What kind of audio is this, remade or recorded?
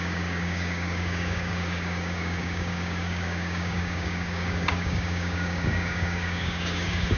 remade